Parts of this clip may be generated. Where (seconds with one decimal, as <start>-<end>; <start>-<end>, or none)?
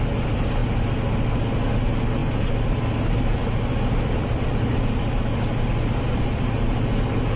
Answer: none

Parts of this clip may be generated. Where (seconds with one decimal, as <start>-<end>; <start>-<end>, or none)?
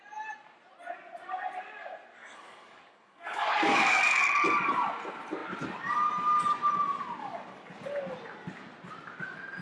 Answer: 2.2-4.2; 7.2-7.9